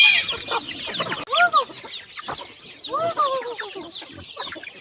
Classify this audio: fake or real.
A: real